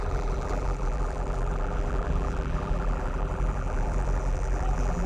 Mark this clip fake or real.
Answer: fake